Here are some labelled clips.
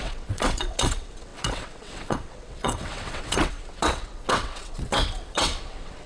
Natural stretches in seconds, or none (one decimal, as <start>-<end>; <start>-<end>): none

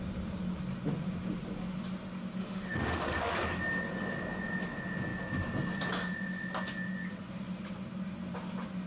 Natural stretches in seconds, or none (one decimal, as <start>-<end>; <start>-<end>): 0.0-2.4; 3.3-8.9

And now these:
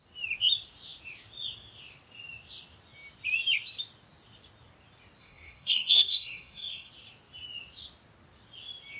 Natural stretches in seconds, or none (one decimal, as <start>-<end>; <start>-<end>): 0.0-5.2; 6.9-9.0

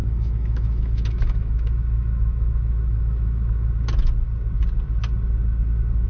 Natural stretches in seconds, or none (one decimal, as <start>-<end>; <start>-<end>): 3.7-6.1

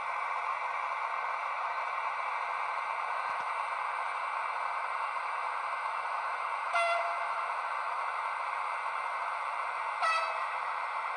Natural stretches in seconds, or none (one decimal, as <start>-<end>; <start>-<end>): 4.1-4.8

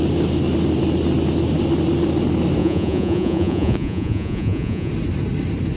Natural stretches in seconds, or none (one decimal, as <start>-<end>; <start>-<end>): 0.0-2.6; 4.9-5.8

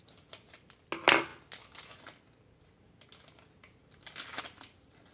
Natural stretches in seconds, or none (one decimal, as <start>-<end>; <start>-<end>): 0.0-5.1

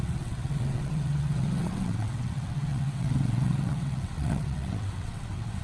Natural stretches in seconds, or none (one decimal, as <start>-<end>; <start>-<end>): none